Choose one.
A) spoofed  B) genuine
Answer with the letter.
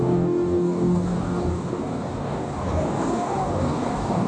A